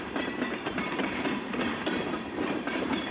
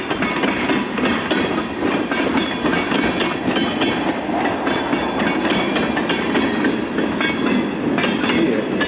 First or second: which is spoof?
first